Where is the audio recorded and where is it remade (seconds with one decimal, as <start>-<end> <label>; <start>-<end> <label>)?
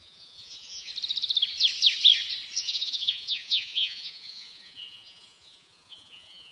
0.0-0.9 remade; 0.9-2.6 recorded; 2.6-6.5 remade